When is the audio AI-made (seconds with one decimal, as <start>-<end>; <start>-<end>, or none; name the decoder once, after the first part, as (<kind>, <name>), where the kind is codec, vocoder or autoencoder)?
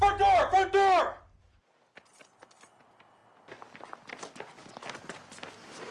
none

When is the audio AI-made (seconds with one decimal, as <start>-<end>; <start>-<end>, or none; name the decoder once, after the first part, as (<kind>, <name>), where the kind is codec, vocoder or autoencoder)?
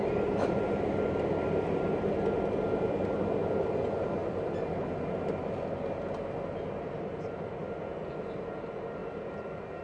none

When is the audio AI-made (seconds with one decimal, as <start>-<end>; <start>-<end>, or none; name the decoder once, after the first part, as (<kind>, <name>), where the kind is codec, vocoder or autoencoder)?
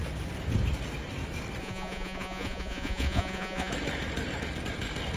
1.6-3.7 (vocoder, Vocos)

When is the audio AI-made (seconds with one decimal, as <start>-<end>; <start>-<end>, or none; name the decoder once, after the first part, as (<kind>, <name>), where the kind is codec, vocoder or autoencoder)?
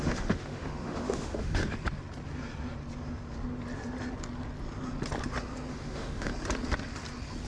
0.0-1.6 (autoencoder, DAC-VAE); 5.7-6.3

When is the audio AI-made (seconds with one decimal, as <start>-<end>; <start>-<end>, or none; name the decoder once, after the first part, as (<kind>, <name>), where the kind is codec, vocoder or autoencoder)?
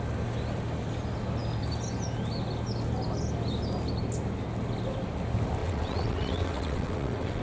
5.6-7.4 (vocoder, WaveNeXt)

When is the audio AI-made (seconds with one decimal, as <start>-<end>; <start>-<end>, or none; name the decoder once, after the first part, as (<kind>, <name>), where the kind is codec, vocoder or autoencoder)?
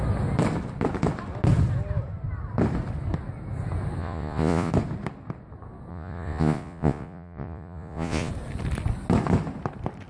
4.0-4.7 (vocoder, Vocos); 5.9-8.3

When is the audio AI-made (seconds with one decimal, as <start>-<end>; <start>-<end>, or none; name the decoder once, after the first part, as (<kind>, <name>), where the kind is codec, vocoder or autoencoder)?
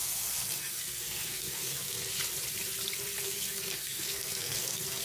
0.0-2.1 (codec, SNAC); 3.2-5.0